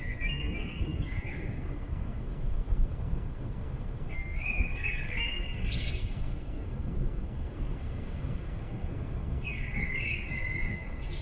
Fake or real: fake